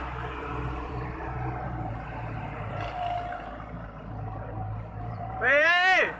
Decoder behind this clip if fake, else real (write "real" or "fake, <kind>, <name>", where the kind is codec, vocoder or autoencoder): fake, vocoder, BigVGAN v2